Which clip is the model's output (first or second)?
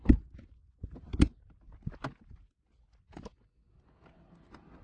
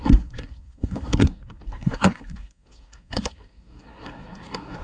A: second